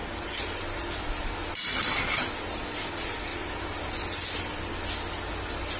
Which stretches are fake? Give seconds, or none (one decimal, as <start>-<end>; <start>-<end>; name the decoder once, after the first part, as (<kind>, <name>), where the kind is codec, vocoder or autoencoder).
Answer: none